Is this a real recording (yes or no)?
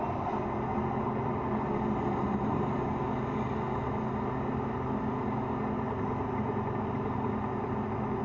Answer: yes